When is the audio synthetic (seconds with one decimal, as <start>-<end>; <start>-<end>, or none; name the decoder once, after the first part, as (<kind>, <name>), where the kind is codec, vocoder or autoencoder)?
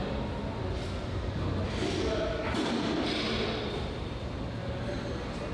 none